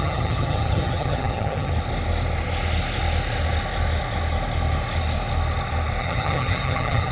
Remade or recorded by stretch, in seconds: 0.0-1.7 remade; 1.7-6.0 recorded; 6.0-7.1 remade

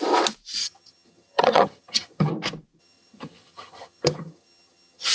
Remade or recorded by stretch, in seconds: 0.0-0.6 recorded; 0.6-2.3 remade; 2.3-2.8 recorded; 2.8-5.1 remade

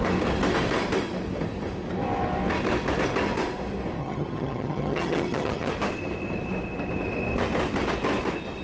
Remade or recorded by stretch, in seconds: 0.0-4.0 recorded; 4.0-5.7 remade; 5.7-8.6 recorded

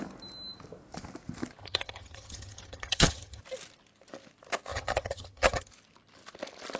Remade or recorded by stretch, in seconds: 0.0-1.6 recorded; 1.6-3.4 remade; 3.4-4.7 recorded; 4.7-5.7 remade; 5.7-6.8 recorded

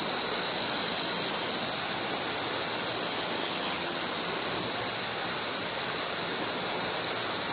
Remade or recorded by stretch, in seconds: 0.0-3.4 recorded; 3.4-4.0 remade; 4.0-7.5 recorded

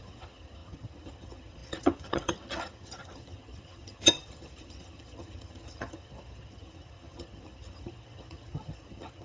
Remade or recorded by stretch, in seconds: 0.0-9.2 remade